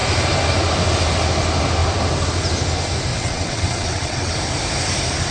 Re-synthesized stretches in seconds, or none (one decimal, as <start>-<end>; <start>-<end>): 3.1-4.3